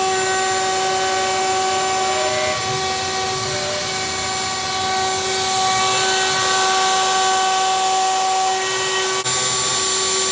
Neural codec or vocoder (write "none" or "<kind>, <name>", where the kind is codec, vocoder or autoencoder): none